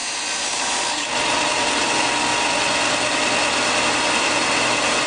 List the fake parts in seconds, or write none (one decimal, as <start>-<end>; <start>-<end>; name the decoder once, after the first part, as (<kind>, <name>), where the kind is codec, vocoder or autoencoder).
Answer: 0.0-1.9 (vocoder, BigVGAN v2)